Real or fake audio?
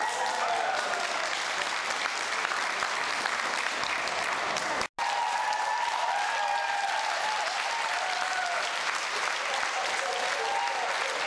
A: real